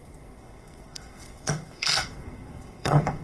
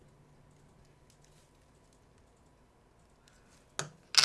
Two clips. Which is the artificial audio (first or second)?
first